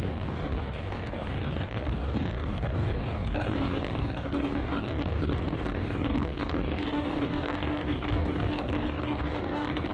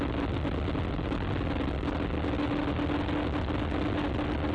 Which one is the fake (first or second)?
first